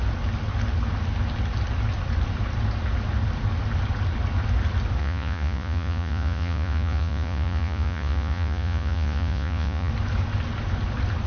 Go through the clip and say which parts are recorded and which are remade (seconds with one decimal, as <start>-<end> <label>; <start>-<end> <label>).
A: 0.0-5.0 recorded; 5.0-9.9 remade; 9.9-11.3 recorded